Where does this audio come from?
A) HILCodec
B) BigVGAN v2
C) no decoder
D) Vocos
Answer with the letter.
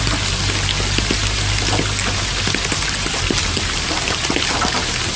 C